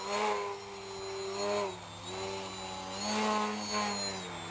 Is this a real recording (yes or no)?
yes